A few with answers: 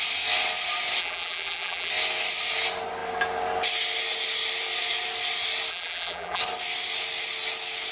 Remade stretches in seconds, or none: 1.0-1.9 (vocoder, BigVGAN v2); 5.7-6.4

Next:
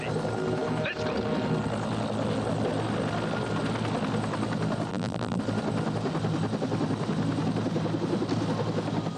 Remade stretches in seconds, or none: 4.9-5.4 (vocoder, BigVGAN v2)

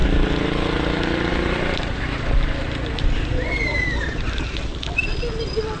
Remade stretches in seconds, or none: 1.3-4.7 (vocoder, BigVGAN v2)

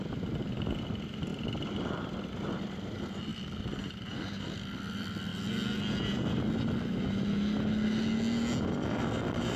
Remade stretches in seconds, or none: 0.0-1.3 (vocoder, BigVGAN v2); 2.5-3.3; 3.8-5.3; 8.6-9.6

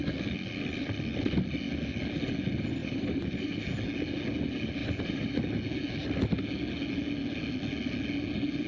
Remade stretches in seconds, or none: 2.8-3.6 (vocoder, BigVGAN v2); 4.8-5.4

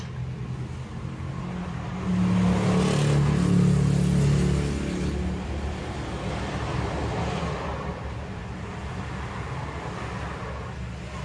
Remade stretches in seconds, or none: 8.4-9.1 (vocoder, BigVGAN v2)